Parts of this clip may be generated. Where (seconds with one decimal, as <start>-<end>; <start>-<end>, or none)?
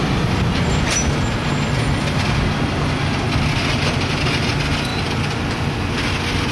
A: none